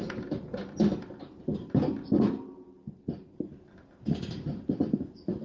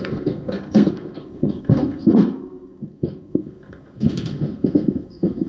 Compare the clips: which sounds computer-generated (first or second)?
second